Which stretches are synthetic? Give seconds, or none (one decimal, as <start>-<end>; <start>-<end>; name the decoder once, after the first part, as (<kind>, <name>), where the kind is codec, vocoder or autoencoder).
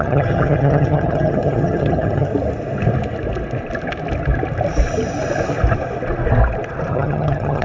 0.0-2.3 (vocoder, HiFi-GAN); 6.9-7.6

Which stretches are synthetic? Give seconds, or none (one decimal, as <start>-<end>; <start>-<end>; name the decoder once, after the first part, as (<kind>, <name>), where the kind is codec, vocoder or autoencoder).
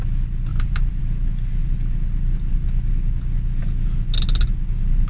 0.5-1.0 (vocoder, BigVGAN v2); 1.6-2.5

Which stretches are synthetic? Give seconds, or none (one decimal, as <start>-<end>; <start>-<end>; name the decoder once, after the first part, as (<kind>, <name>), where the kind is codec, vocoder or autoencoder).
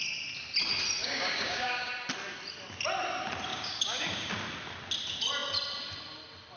1.0-1.9 (codec, DAC); 3.5-4.3